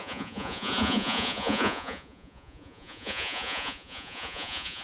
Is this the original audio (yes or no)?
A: no